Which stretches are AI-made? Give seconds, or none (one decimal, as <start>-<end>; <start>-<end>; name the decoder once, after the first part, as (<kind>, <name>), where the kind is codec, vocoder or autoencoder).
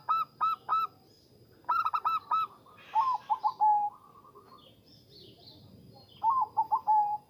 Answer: none